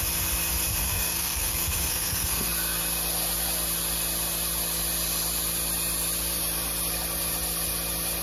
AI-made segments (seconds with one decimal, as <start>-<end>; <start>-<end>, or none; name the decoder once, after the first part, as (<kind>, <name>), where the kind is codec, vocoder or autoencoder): 0.8-2.5 (codec, SNAC)